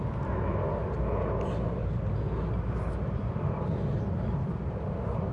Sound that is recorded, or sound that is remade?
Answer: recorded